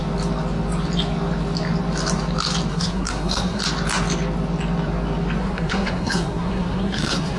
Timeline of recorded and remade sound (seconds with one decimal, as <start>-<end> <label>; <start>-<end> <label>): 0.0-2.7 recorded; 2.7-3.6 remade; 3.6-5.4 recorded; 5.4-7.4 remade